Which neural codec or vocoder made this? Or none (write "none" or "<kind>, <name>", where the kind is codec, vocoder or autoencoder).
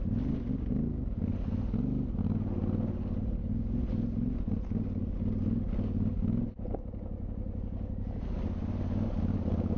none